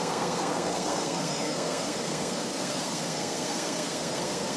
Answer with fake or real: fake